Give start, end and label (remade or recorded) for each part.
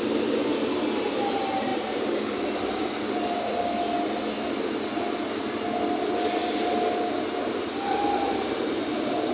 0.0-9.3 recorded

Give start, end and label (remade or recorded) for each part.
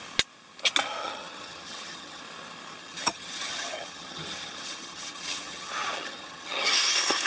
0.0-1.0 recorded; 1.0-2.2 remade; 2.2-2.8 recorded; 2.8-6.7 remade; 6.7-7.3 recorded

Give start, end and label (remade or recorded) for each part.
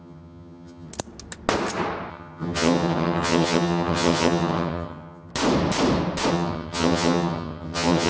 0.0-0.9 remade; 0.9-2.1 recorded; 2.1-5.3 remade; 5.3-6.3 recorded; 6.3-8.1 remade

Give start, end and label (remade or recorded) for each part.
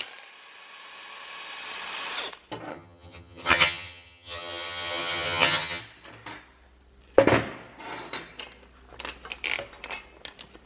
0.0-2.7 recorded; 2.7-5.8 remade; 5.8-10.7 recorded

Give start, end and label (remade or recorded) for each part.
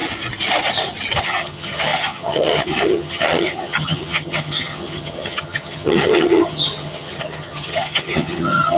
0.0-1.2 recorded; 1.2-8.8 remade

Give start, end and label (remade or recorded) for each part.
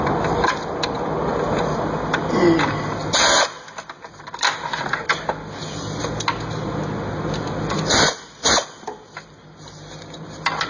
0.0-10.7 recorded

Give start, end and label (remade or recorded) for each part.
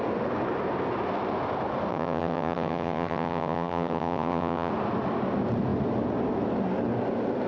0.0-1.9 recorded; 1.9-4.7 remade; 4.7-7.5 recorded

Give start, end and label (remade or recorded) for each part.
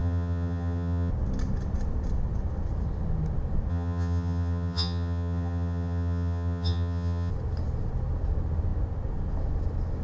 0.0-1.1 remade; 1.1-3.7 recorded; 3.7-7.3 remade; 7.3-10.0 recorded